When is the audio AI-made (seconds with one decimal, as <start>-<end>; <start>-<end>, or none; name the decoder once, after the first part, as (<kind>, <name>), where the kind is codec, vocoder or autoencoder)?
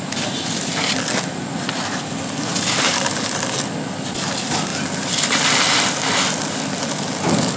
none